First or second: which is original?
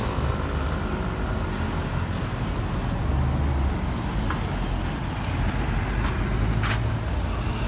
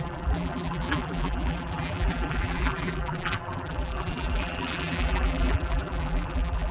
first